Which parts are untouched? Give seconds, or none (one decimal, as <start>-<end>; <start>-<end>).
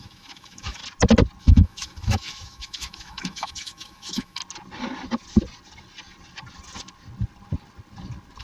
0.8-1.4; 4.4-8.4